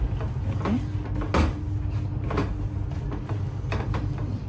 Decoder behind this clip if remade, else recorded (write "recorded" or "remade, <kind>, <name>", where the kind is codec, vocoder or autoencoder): recorded